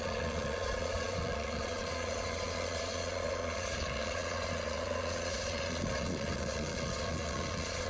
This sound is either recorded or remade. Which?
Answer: remade